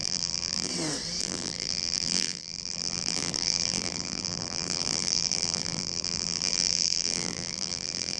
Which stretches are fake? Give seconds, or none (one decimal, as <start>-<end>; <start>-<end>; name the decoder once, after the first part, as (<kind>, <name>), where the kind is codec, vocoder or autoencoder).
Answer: 0.0-0.7 (vocoder, BigVGAN v2); 1.2-8.2